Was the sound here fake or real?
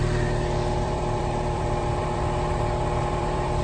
fake